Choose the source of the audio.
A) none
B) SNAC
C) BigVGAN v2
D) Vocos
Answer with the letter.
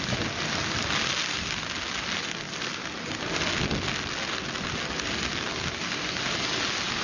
A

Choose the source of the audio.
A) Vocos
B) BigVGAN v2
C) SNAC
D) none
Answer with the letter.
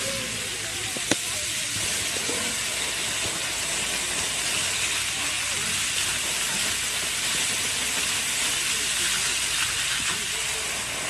D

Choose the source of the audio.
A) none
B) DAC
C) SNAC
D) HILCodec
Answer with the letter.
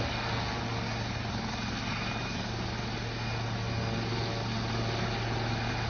A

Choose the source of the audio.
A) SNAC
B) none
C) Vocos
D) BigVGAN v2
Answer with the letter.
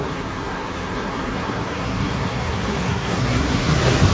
A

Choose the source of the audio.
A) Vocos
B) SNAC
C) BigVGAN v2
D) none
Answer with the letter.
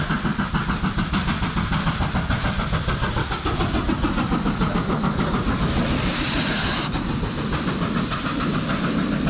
D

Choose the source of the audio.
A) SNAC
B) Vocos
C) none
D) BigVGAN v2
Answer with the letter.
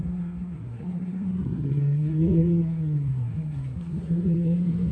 A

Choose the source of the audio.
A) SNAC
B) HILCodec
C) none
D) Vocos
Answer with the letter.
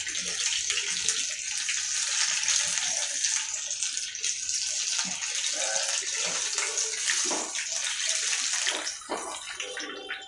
C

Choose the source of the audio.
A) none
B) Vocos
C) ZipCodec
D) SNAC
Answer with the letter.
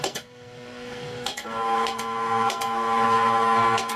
D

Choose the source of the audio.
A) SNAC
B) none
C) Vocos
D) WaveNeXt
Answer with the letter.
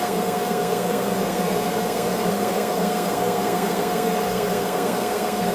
A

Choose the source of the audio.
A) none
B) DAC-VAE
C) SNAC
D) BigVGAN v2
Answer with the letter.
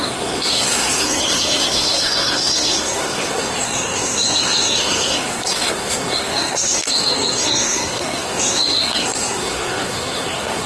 C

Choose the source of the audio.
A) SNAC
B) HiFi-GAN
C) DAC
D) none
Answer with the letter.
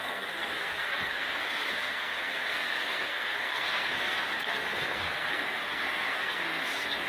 A